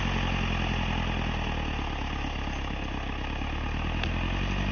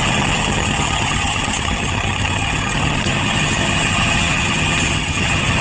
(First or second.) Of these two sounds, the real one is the first